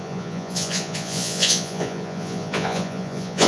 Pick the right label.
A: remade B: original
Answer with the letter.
A